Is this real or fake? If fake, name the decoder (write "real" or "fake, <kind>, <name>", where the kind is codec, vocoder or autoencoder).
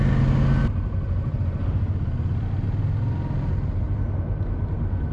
real